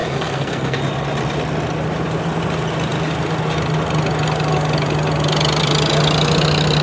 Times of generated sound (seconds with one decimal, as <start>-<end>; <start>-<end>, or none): 0.0-0.8